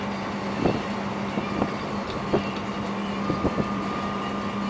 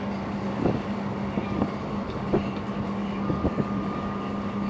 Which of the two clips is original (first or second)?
first